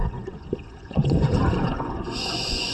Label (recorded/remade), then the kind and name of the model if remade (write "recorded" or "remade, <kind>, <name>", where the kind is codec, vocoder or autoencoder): remade, vocoder, Vocos